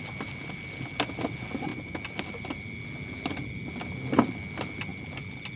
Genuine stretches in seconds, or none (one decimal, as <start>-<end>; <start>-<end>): 0.0-5.6